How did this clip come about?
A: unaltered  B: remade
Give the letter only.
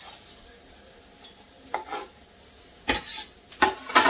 A